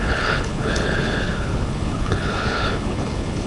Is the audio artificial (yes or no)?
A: yes